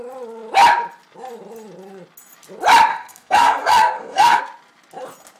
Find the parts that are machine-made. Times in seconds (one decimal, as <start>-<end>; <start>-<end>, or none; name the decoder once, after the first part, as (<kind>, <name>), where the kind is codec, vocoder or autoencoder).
2.9-4.4 (codec, SNAC)